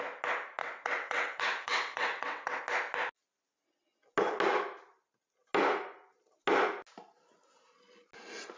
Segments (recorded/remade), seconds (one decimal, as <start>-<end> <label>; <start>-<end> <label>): 0.0-0.6 recorded; 0.6-2.6 remade; 2.6-8.6 recorded